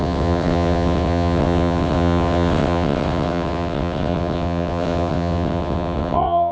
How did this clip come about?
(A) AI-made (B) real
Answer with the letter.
A